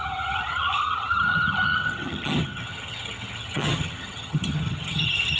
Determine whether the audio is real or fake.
fake